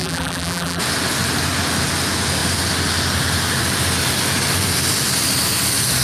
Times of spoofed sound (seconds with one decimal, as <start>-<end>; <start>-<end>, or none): 0.0-0.8